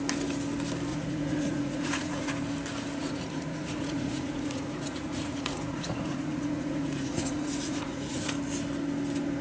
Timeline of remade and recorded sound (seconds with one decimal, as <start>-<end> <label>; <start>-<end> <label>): 0.0-0.9 recorded; 0.9-2.3 remade; 2.3-3.0 recorded; 3.0-8.3 remade; 8.3-9.4 recorded